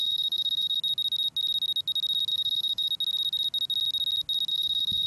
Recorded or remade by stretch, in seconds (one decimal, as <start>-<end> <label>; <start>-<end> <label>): 0.0-0.8 remade; 0.8-2.3 recorded; 2.3-2.9 remade; 2.9-4.5 recorded; 4.5-5.1 remade